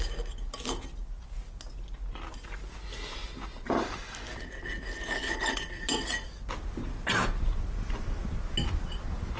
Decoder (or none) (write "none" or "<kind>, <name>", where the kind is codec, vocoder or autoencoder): none